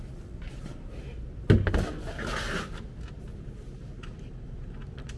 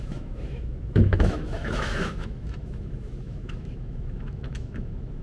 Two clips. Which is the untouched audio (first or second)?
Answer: first